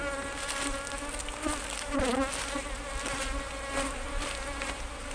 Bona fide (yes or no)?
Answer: yes